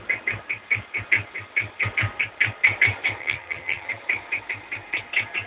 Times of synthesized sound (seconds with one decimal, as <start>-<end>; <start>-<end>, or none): 3.2-3.9